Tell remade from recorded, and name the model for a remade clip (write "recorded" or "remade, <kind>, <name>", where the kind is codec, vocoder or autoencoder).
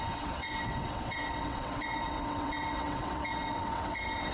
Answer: remade, vocoder, WaveNeXt